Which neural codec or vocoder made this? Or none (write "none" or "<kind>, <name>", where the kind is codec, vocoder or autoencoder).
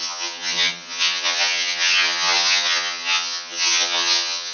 vocoder, HiFi-GAN